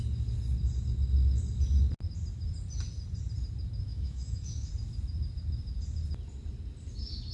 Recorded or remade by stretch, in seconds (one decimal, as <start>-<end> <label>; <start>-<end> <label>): 0.0-3.9 recorded; 3.9-4.7 remade; 4.7-7.3 recorded